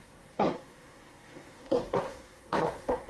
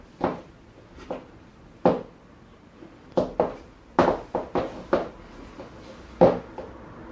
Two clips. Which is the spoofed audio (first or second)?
first